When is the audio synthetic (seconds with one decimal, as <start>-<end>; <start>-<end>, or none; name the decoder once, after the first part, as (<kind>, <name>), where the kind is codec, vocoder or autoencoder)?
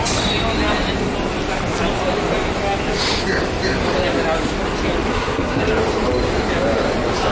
5.1-5.6 (codec, SNAC)